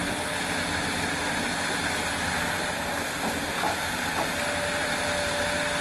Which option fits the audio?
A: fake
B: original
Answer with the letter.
B